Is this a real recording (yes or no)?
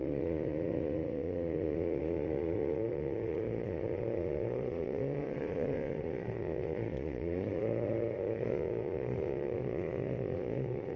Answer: no